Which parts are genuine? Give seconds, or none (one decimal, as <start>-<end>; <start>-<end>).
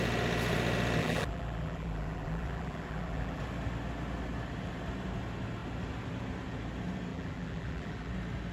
0.0-1.0; 3.4-7.1; 8.1-8.5